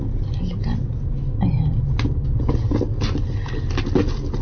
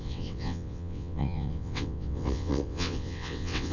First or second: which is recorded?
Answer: first